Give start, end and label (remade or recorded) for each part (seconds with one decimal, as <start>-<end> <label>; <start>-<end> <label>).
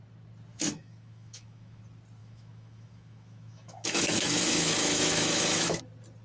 0.0-0.5 recorded; 0.5-1.8 remade; 1.8-2.2 recorded; 2.2-5.8 remade; 5.8-6.2 recorded